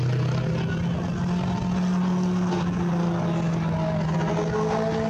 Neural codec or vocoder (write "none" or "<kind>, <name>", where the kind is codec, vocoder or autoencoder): none